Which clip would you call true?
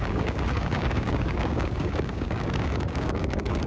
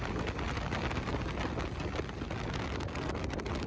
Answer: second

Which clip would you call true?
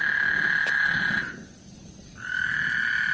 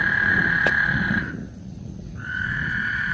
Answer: first